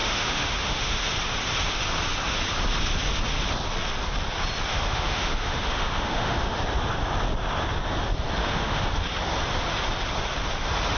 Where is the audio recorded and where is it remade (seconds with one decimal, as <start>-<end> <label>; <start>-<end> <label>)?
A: 0.0-1.1 remade; 1.1-4.7 recorded; 4.7-6.6 remade; 6.6-8.4 recorded; 8.4-9.0 remade; 9.0-11.0 recorded

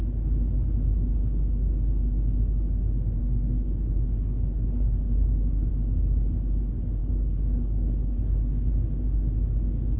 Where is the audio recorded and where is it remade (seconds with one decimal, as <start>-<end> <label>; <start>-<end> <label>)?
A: 0.0-3.2 recorded; 3.2-5.7 remade; 5.7-7.0 recorded; 7.0-8.7 remade; 8.7-10.0 recorded

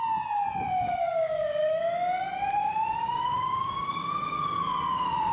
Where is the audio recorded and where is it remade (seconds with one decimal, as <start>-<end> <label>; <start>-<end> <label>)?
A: 0.0-0.7 recorded; 0.7-1.8 remade; 1.8-2.6 recorded; 2.6-4.6 remade; 4.6-5.3 recorded